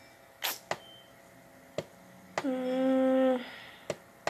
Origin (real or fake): real